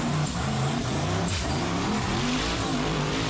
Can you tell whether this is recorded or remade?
remade